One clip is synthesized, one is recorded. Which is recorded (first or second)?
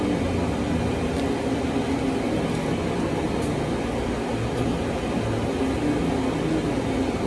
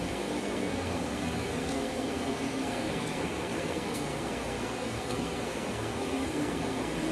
first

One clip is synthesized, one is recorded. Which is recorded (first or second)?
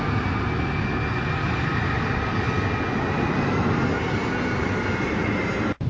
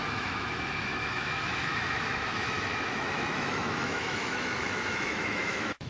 first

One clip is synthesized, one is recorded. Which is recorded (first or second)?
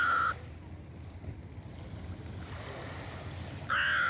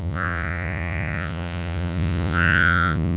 first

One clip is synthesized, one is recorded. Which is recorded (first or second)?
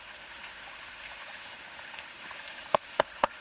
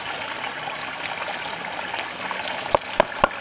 second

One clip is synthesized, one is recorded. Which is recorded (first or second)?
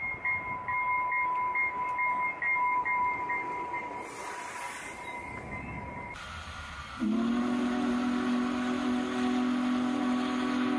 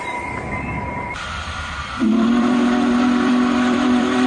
first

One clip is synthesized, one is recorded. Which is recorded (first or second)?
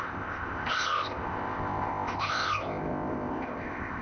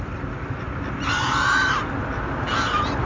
second